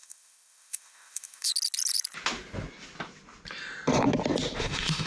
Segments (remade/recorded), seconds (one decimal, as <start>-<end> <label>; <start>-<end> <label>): 0.0-1.5 remade; 1.5-4.6 recorded; 4.6-5.1 remade